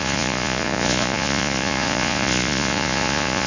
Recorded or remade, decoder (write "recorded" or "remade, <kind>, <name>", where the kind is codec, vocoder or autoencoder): remade, vocoder, Vocos